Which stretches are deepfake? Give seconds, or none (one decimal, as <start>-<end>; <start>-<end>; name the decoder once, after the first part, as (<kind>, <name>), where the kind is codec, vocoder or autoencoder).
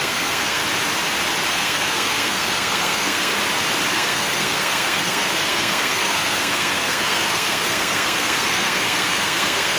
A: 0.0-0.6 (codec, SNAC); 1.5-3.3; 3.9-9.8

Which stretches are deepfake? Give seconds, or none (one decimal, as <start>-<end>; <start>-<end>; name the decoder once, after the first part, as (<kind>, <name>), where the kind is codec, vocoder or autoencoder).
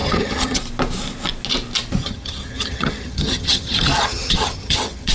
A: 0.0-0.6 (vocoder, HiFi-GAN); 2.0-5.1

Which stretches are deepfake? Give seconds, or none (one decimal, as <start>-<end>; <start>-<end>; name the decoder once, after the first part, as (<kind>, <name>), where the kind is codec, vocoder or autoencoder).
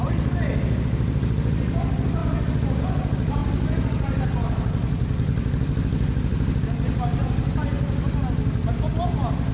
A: none